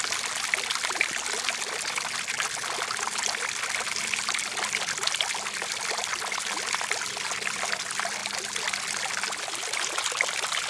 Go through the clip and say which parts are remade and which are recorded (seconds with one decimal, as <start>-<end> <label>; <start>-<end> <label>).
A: 0.0-10.7 recorded